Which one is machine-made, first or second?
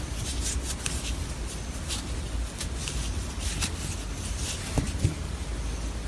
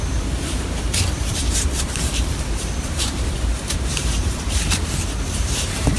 second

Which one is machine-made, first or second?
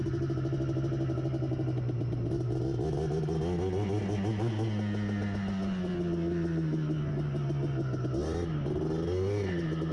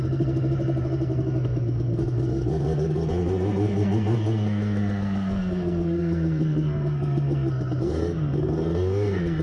second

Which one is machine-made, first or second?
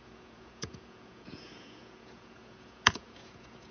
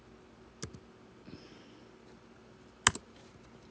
first